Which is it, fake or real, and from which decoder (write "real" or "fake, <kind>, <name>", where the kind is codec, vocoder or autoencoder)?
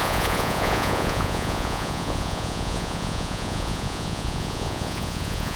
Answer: fake, vocoder, Vocos